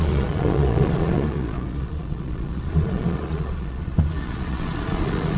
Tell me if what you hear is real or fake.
fake